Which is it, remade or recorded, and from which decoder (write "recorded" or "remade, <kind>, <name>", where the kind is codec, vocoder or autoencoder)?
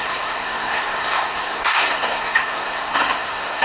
remade, codec, SNAC